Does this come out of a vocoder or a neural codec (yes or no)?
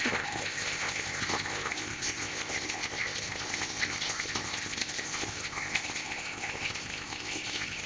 yes